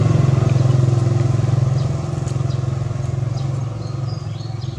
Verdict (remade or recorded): recorded